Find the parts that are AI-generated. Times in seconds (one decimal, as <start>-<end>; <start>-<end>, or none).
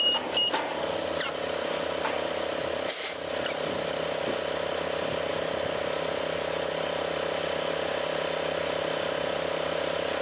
none